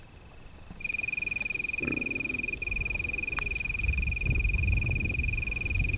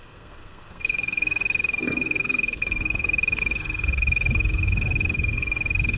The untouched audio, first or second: first